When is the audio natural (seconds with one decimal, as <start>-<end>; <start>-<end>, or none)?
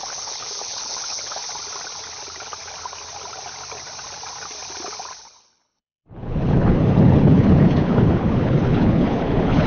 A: 1.4-5.2